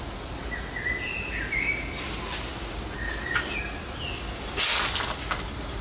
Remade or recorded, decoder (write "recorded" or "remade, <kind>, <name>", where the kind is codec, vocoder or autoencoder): recorded